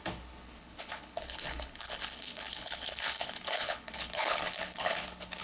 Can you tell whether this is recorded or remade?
remade